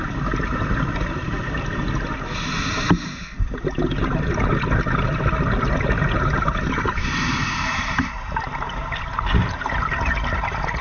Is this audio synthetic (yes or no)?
no